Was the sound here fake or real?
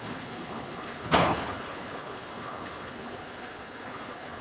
fake